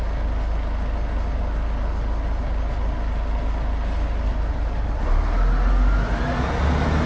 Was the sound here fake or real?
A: real